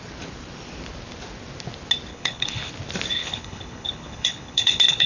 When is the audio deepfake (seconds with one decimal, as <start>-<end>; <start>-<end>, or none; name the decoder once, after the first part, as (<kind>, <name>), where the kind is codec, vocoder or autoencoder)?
2.1-2.7 (codec, HILCodec); 3.2-5.1